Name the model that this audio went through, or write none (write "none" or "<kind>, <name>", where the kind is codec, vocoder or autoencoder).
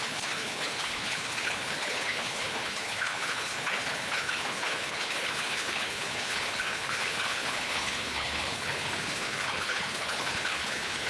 codec, HILCodec